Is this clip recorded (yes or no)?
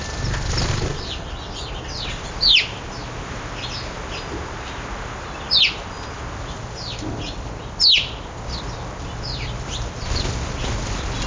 yes